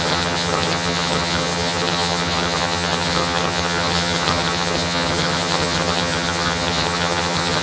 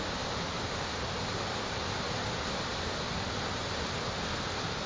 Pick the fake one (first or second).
first